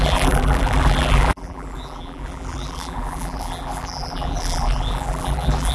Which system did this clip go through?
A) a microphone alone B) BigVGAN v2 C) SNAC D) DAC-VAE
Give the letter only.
B